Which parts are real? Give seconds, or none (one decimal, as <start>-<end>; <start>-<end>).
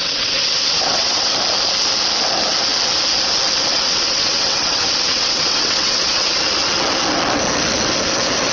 1.3-3.7; 6.3-8.5